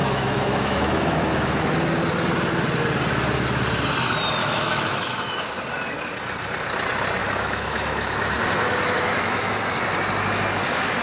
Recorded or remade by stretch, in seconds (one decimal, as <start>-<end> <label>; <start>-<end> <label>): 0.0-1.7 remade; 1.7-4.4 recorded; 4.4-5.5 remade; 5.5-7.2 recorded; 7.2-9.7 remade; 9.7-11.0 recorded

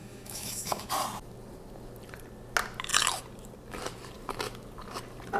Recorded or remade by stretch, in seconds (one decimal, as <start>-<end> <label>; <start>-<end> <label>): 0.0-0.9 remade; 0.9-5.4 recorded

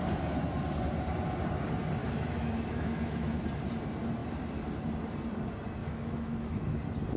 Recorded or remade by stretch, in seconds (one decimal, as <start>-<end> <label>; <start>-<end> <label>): 0.0-2.0 recorded; 2.0-3.4 remade; 3.4-5.8 recorded; 5.8-6.6 remade; 6.6-7.2 recorded

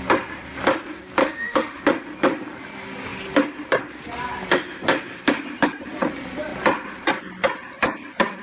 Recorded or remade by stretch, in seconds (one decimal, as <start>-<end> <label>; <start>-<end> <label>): 0.0-1.2 recorded; 1.2-1.8 remade; 1.8-8.4 recorded

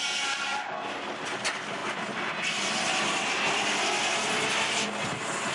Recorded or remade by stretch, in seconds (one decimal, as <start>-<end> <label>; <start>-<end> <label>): 0.0-5.5 recorded